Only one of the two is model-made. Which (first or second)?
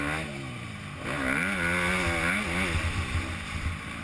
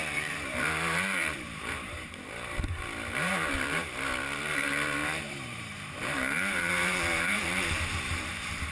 second